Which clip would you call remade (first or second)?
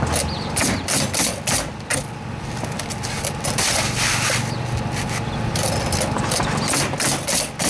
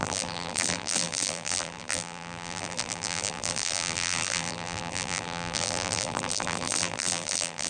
second